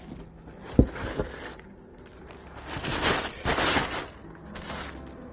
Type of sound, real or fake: real